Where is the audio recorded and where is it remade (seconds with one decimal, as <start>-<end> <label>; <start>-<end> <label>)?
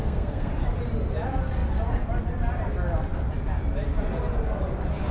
0.0-0.5 remade; 0.5-5.1 recorded